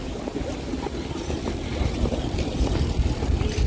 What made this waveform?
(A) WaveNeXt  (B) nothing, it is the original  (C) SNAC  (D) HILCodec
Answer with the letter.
B